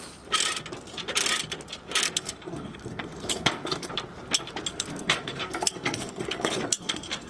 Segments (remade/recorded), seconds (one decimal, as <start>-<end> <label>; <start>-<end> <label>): 0.0-2.0 recorded; 2.0-3.9 remade; 3.9-4.7 recorded; 4.7-7.3 remade